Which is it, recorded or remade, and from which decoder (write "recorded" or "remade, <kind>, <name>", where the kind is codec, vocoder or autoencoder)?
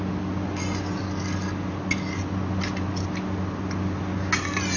recorded